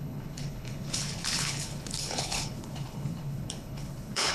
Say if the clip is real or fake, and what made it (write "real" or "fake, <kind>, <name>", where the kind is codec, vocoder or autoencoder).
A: fake, codec, HILCodec